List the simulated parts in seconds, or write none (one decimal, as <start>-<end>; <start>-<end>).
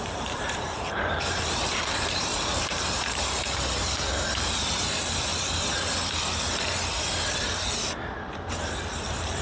0.0-5.3; 8.6-9.4